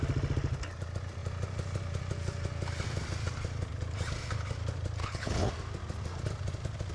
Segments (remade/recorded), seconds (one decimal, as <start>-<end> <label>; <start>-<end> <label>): 0.0-5.0 recorded; 5.0-5.5 remade; 5.5-6.9 recorded